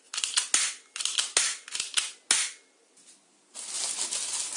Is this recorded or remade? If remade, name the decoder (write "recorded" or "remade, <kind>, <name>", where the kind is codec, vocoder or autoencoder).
recorded